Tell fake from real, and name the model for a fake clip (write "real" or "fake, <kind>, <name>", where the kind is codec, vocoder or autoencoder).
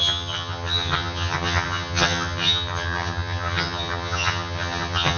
fake, vocoder, HiFi-GAN